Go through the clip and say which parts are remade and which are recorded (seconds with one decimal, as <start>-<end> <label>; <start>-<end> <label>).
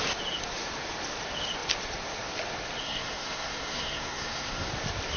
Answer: 0.0-2.8 recorded; 2.8-4.7 remade; 4.7-5.2 recorded